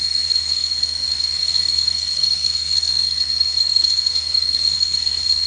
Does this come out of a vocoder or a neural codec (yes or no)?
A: yes